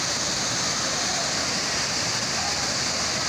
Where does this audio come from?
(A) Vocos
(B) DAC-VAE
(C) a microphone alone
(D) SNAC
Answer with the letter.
C